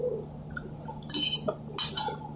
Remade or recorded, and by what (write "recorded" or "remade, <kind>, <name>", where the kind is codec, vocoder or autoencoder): recorded